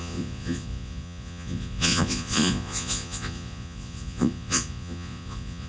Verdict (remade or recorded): remade